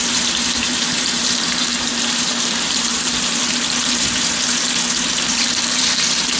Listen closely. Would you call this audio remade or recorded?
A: remade